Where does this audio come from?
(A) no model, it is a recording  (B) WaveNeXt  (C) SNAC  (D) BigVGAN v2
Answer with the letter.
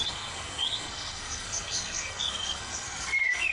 C